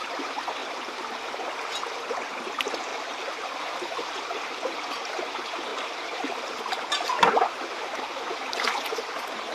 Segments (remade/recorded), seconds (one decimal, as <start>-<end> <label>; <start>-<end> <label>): 0.0-0.6 recorded; 0.6-1.3 remade; 1.3-2.9 recorded; 2.9-4.5 remade; 4.5-5.7 recorded; 5.7-6.7 remade; 6.7-9.5 recorded